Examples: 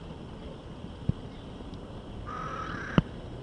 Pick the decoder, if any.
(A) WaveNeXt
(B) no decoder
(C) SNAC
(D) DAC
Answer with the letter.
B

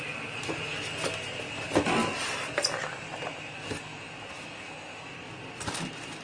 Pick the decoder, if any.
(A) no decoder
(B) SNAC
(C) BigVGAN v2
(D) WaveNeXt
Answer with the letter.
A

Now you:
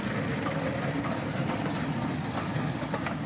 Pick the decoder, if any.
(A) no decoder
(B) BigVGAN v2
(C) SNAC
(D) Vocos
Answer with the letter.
A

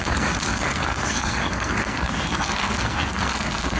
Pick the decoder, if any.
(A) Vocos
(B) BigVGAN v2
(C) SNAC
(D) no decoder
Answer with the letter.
C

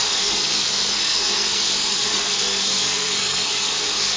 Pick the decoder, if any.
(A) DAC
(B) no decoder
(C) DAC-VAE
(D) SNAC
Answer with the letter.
D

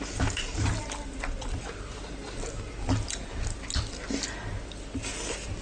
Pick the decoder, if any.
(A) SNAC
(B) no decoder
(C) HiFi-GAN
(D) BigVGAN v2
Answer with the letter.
B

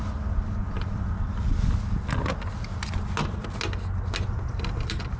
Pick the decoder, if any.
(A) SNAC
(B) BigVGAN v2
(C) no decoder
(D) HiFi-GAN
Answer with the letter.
C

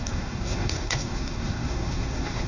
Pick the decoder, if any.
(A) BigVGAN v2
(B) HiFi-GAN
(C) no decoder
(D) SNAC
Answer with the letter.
D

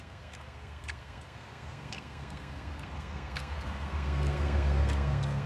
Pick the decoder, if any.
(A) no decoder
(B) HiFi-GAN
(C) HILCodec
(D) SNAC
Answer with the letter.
D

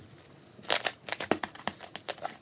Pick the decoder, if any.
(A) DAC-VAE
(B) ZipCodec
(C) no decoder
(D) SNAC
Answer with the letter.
C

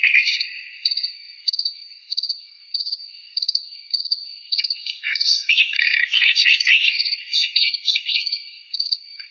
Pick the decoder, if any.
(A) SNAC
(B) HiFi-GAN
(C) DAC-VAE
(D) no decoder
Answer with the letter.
A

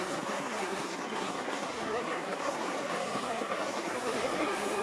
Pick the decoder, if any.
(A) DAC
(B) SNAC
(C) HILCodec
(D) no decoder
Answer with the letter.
B